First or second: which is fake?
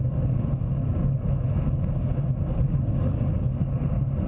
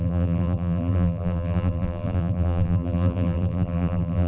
second